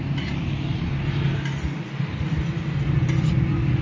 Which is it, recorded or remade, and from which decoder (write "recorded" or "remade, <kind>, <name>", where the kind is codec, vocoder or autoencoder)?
recorded